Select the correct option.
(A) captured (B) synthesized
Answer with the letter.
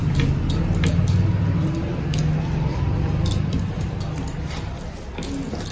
A